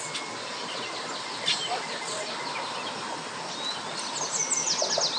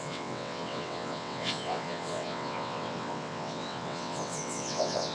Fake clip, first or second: second